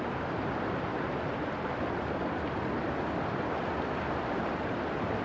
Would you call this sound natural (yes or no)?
yes